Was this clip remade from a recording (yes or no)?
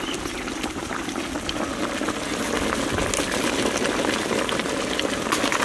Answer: no